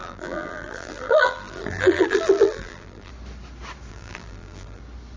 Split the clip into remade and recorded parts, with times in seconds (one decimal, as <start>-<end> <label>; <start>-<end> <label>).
0.0-3.1 remade; 3.1-3.9 recorded; 3.9-4.8 remade; 4.8-5.2 recorded